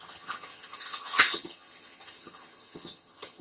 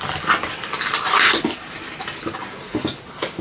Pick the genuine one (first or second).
second